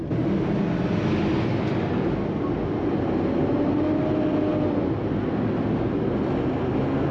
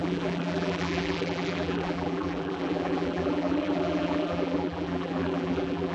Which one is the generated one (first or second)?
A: second